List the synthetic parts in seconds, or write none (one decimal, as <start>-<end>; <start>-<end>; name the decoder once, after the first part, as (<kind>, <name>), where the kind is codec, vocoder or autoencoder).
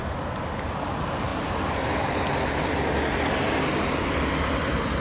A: none